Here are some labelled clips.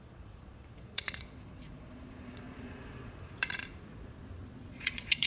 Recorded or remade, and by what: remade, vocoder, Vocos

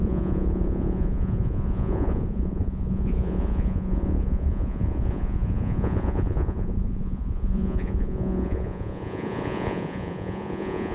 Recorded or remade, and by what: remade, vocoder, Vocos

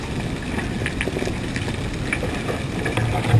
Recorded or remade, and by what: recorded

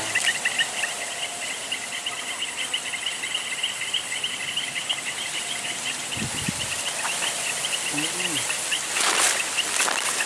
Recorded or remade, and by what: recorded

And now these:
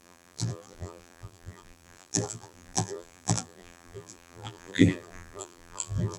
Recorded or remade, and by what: remade, vocoder, BigVGAN v2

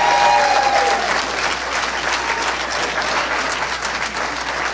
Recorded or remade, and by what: recorded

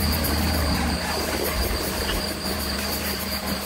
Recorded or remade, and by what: remade, vocoder, BigVGAN v2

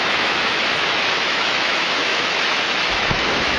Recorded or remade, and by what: remade, autoencoder, DAC-VAE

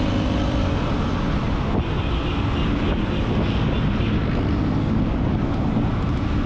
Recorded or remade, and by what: recorded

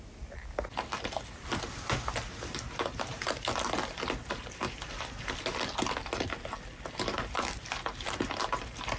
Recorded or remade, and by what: recorded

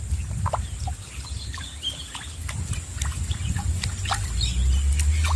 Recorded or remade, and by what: recorded